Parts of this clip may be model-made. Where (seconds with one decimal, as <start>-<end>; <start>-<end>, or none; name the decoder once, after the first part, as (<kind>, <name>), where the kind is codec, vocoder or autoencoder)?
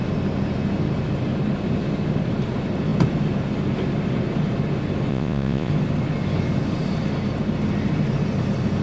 5.1-5.7 (vocoder, Vocos)